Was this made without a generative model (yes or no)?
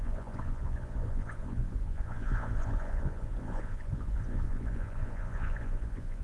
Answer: no